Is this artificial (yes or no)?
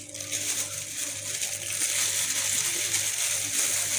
no